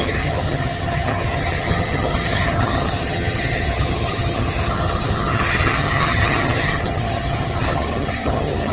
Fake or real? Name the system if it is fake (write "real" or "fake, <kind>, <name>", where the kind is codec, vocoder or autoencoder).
fake, vocoder, HiFi-GAN